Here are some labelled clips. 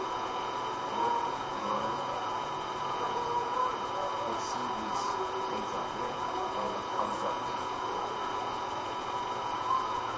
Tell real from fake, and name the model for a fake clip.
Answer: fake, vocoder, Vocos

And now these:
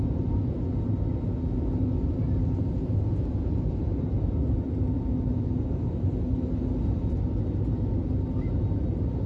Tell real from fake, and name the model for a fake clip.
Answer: real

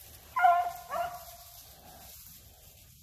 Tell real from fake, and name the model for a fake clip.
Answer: real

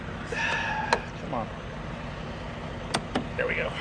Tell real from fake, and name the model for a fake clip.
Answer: real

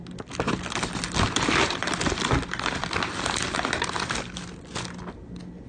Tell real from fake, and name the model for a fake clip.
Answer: real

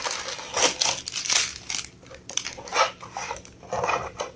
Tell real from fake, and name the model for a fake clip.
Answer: real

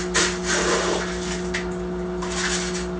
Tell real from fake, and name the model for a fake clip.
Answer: real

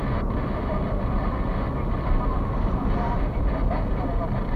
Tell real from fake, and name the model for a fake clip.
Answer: real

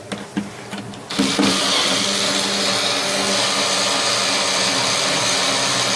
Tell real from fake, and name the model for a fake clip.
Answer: fake, vocoder, BigVGAN v2